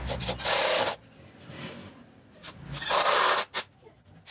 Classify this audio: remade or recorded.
recorded